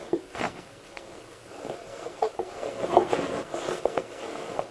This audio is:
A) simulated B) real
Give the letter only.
A